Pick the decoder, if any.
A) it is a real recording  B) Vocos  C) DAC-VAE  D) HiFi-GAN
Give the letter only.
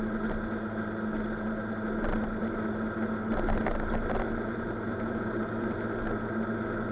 A